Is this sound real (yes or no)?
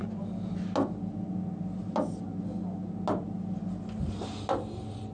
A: yes